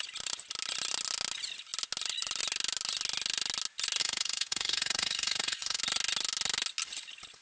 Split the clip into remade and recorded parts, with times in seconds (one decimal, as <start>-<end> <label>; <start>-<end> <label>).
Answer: 0.0-4.0 recorded; 4.0-5.8 remade; 5.8-7.4 recorded